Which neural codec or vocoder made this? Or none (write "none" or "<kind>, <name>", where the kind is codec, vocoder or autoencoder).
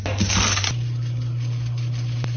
none